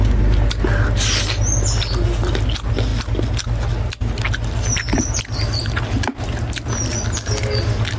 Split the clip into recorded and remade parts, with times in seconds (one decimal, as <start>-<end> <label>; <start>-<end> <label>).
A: 0.0-8.0 recorded